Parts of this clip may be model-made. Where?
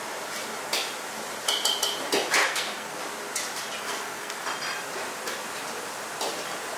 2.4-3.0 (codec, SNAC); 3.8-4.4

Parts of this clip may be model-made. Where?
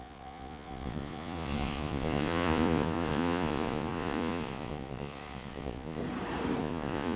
0.0-6.0 (vocoder, Vocos); 6.6-7.2